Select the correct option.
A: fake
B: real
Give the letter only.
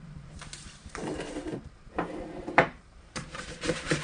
A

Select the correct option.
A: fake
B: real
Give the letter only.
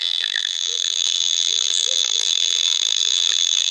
A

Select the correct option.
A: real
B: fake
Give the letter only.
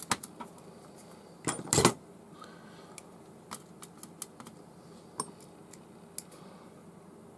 A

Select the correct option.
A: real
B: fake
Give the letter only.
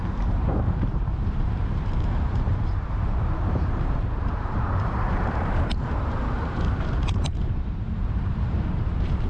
B